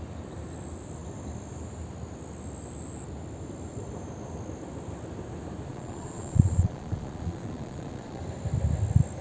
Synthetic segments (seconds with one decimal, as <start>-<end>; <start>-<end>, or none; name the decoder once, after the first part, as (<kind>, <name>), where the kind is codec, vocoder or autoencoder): 5.7-8.2 (vocoder, Vocos)